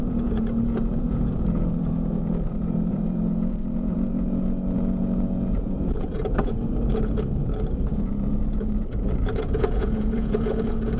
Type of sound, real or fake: fake